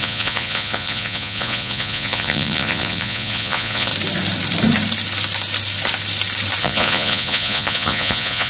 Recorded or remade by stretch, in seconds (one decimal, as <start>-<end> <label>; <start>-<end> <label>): 0.0-3.9 remade; 3.9-6.6 recorded; 6.6-8.5 remade